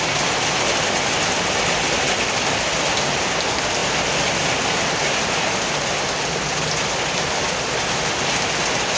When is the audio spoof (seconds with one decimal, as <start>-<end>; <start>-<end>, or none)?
none